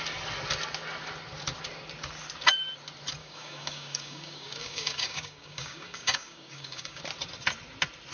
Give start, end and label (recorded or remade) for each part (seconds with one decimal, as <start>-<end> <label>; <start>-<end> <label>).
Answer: 0.0-3.2 recorded; 3.2-7.0 remade; 7.0-8.1 recorded